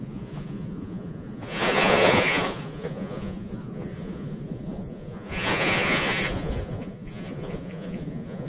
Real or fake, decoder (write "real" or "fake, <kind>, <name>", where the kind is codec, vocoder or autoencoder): fake, vocoder, Vocos